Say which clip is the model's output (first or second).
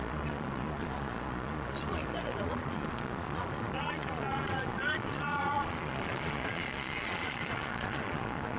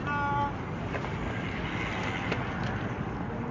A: first